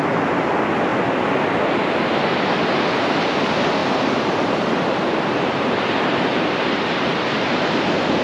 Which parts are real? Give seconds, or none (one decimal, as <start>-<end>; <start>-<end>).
0.0-3.8